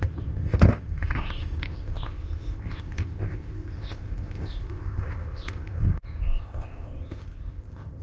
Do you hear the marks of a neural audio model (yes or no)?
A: yes